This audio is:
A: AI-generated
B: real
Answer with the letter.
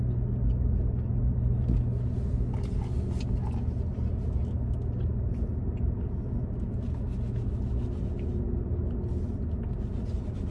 B